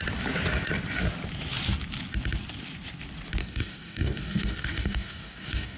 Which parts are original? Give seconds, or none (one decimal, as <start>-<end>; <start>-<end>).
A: 0.0-3.4